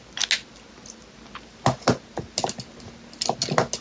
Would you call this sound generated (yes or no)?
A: no